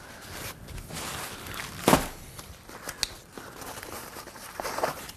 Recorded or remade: recorded